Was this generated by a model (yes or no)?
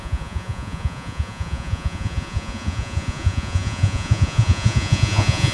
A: yes